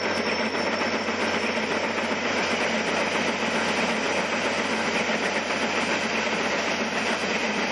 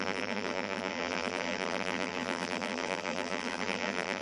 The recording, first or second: first